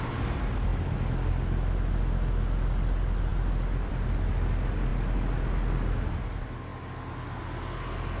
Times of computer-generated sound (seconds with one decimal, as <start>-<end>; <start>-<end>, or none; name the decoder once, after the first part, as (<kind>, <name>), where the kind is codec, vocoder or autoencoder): none